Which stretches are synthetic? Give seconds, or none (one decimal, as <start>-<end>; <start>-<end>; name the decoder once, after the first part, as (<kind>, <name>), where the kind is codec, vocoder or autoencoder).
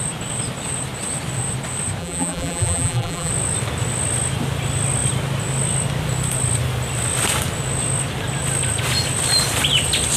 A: 2.0-3.3 (vocoder, BigVGAN v2)